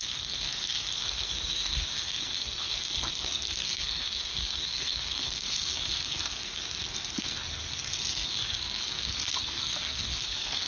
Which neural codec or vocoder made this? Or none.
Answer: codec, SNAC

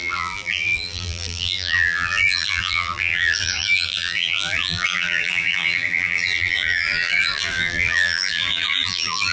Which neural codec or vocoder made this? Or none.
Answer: vocoder, BigVGAN v2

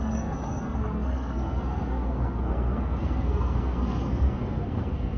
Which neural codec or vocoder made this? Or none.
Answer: codec, SNAC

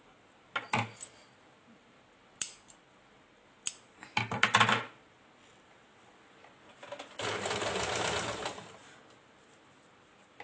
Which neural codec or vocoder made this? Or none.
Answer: none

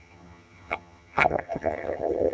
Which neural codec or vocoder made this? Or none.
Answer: vocoder, HiFi-GAN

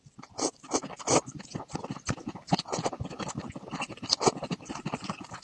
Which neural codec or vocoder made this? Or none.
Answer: none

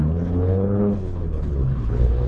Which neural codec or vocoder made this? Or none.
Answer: codec, HILCodec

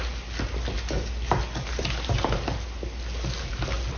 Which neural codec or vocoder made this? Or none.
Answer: none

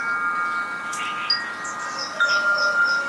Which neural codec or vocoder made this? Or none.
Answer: none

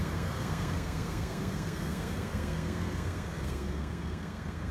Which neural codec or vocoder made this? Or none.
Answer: codec, SNAC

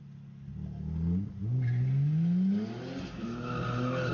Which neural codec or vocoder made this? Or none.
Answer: none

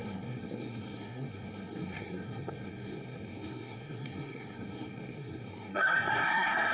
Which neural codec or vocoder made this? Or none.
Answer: codec, SNAC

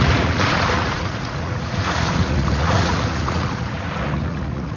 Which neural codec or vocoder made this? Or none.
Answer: vocoder, Vocos